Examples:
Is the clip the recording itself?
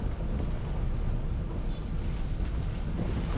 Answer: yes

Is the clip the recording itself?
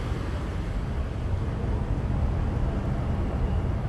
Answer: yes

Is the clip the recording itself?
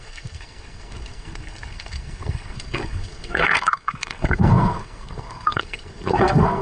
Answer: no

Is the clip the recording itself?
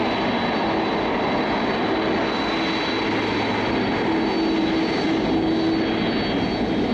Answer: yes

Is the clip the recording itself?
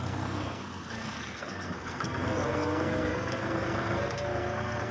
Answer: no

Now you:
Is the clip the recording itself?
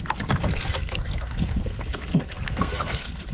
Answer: no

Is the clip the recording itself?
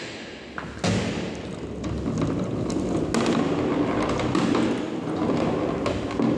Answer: yes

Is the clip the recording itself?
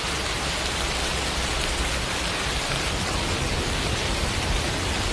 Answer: yes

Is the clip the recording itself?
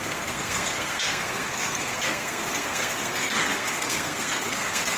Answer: no